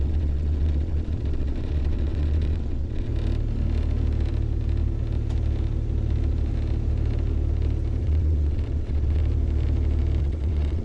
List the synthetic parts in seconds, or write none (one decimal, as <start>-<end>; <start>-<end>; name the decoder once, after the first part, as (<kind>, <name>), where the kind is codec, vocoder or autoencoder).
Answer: 0.0-3.1 (vocoder, WaveNeXt); 8.0-9.2; 10.2-10.8